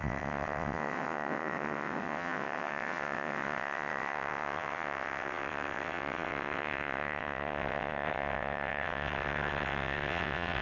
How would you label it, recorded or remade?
remade